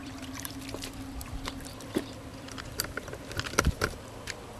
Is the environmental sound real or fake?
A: fake